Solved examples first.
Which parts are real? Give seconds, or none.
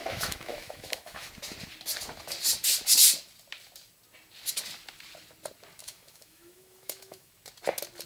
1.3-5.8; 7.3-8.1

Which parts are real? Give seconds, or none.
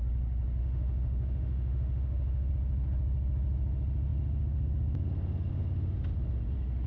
0.0-0.6; 2.5-6.9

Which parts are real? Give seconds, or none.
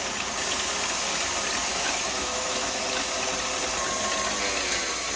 0.0-1.7; 2.8-5.2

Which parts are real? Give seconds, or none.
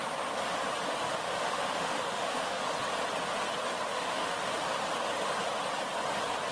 0.0-1.2; 2.6-3.9; 4.5-6.5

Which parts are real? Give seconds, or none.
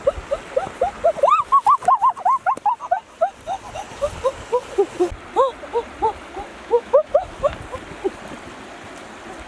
0.0-6.5; 7.1-9.5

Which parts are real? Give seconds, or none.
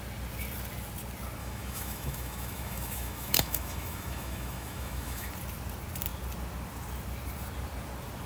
0.0-1.4; 5.3-8.3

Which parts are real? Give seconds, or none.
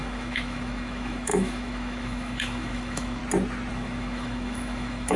3.2-3.7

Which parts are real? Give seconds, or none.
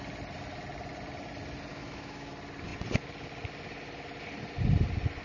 0.0-1.7; 2.3-5.2